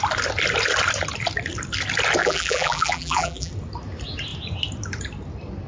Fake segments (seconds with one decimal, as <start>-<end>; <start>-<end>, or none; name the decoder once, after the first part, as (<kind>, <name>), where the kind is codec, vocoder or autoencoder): 2.2-3.5 (vocoder, BigVGAN v2)